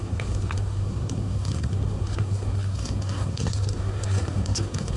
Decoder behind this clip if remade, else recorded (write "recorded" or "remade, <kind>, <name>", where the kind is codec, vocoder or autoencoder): remade, codec, SNAC